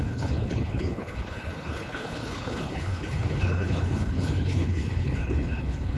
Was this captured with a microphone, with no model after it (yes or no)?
no